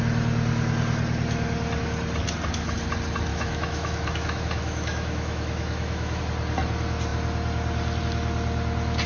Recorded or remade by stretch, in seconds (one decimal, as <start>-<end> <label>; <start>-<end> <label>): 0.0-3.3 recorded; 3.3-6.2 remade; 6.2-9.1 recorded

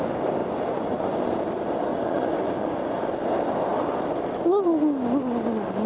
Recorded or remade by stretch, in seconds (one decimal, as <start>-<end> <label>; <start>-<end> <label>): 0.0-0.4 recorded; 0.4-1.3 remade; 1.3-1.9 recorded; 1.9-3.1 remade; 3.1-5.9 recorded

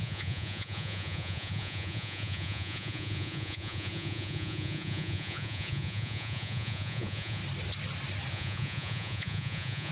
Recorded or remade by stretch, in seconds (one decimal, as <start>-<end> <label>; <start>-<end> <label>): 0.0-7.4 remade; 7.4-8.3 recorded; 8.3-9.9 remade